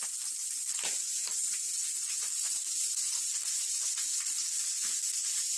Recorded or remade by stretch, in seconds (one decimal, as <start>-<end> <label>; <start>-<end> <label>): 0.0-5.6 recorded